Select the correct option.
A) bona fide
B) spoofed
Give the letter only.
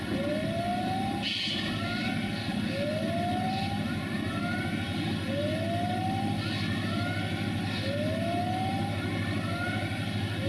A